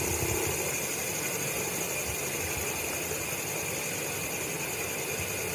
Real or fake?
real